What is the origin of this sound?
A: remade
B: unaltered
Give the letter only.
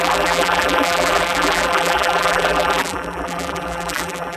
A